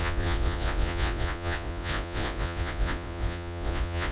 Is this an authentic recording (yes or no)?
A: no